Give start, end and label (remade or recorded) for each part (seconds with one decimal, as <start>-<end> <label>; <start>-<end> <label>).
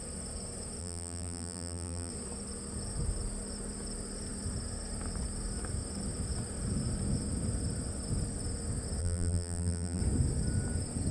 0.0-0.8 recorded; 0.8-2.1 remade; 2.1-9.0 recorded; 9.0-10.0 remade; 10.0-11.1 recorded